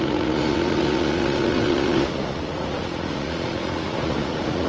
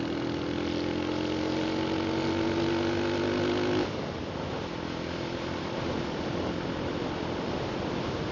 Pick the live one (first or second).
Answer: second